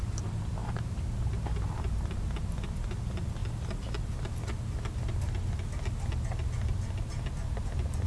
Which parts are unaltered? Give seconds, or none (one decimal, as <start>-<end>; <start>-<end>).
0.0-8.1